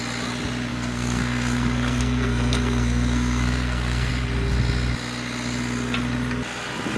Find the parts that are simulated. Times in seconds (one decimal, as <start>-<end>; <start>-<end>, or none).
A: 0.7-4.1